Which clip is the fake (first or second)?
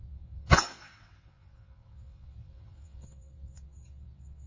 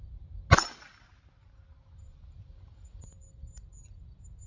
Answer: first